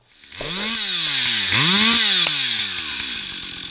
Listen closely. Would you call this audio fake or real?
real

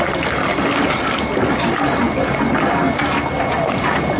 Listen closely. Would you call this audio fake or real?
real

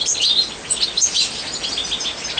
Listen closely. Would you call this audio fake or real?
real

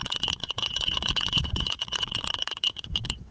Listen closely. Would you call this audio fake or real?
fake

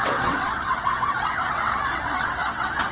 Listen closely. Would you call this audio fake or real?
fake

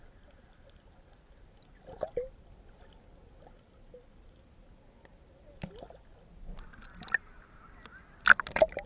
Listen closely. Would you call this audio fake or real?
real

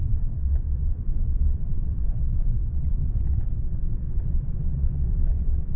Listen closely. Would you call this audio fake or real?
fake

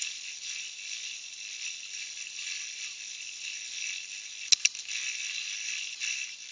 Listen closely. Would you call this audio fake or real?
real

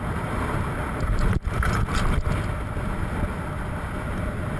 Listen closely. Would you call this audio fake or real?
real